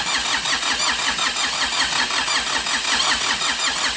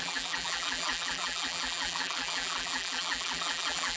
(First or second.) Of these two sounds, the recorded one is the first